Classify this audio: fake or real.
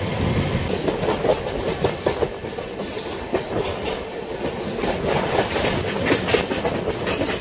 real